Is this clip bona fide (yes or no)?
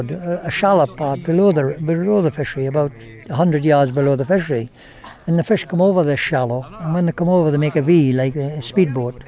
yes